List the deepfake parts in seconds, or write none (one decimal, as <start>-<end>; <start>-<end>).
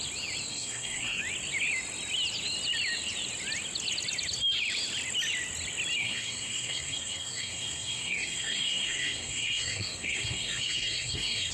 0.5-1.2; 6.0-11.5